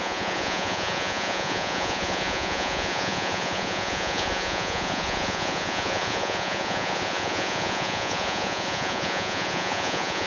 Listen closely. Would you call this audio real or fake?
fake